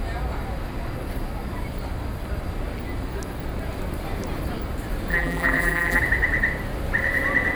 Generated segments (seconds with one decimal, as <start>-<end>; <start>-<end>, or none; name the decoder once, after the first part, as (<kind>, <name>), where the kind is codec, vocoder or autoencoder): 5.1-6.0 (vocoder, BigVGAN v2)